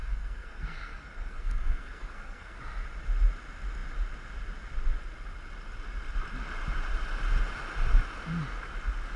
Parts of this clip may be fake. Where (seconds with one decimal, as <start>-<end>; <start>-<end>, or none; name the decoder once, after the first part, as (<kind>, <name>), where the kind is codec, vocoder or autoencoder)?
0.0-2.6 (codec, SNAC)